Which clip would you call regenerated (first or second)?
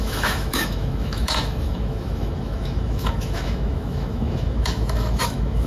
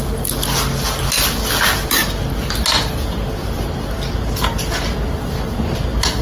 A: first